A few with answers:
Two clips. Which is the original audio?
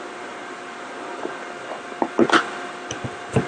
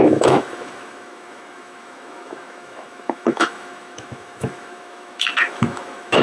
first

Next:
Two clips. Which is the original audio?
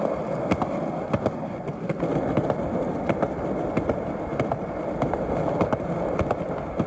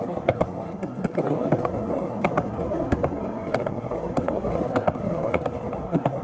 first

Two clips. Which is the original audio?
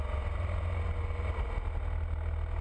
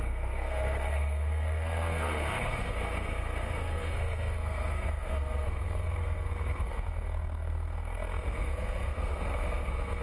first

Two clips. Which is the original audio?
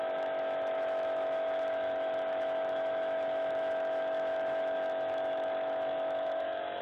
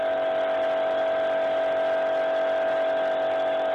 second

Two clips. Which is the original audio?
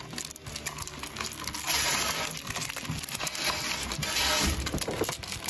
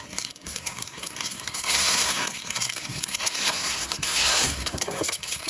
first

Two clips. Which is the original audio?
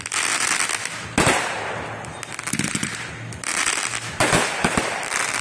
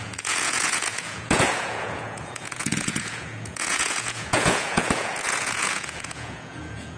first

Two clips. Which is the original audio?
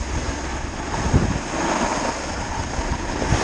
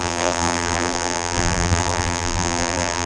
first